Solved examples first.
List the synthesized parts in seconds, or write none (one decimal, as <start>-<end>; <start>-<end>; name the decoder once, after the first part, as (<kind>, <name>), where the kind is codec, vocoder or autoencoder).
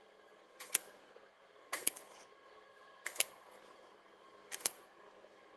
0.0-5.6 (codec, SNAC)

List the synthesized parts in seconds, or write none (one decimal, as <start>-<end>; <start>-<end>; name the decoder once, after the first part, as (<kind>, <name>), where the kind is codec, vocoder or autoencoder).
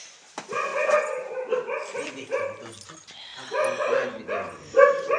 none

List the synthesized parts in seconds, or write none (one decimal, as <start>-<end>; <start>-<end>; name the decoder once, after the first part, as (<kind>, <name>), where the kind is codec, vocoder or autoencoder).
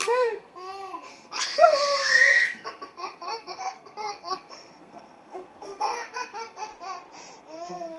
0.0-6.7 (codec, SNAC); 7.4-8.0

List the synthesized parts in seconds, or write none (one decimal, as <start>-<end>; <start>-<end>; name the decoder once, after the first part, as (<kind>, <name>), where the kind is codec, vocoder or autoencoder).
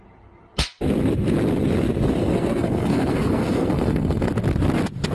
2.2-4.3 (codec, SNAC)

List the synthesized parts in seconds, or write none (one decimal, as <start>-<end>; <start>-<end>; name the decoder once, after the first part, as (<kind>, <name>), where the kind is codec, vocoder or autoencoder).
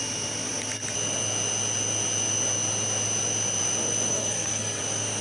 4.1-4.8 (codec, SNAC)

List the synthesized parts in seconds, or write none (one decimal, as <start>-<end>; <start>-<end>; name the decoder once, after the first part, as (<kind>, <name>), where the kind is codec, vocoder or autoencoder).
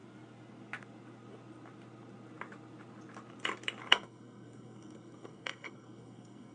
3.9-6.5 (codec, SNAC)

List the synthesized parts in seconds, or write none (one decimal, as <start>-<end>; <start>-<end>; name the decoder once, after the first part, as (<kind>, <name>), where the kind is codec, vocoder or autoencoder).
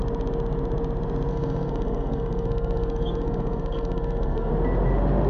1.3-4.5 (codec, SNAC)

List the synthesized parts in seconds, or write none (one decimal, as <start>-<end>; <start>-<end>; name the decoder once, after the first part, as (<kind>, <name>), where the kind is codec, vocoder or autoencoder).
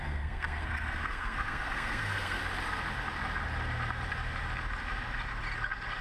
0.0-2.4 (codec, SNAC)